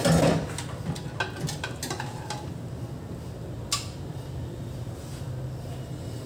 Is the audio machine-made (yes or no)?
no